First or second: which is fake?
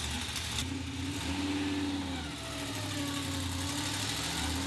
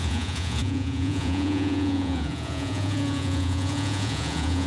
second